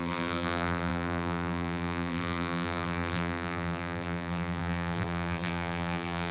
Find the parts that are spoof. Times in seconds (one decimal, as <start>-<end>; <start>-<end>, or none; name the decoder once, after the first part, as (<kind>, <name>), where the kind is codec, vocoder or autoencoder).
0.0-6.3 (vocoder, BigVGAN v2)